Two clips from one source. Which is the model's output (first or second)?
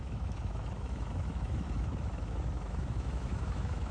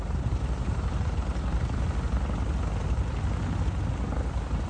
first